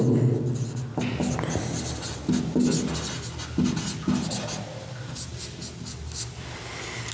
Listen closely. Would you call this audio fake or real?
real